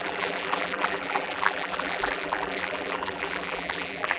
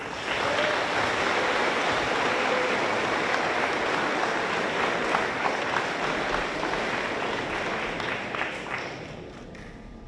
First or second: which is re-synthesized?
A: first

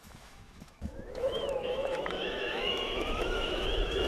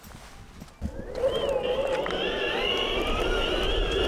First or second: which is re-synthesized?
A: first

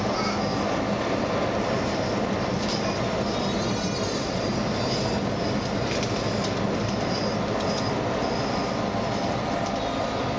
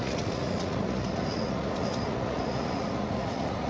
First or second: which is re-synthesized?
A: second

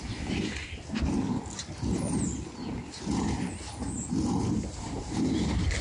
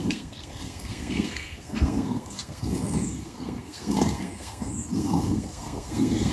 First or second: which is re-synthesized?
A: second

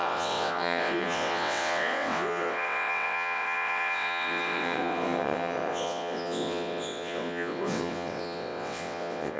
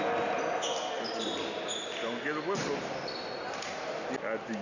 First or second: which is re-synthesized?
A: first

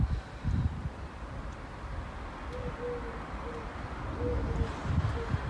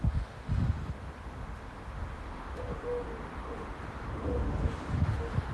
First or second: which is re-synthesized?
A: second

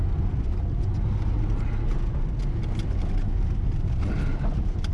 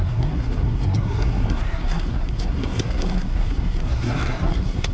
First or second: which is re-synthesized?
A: second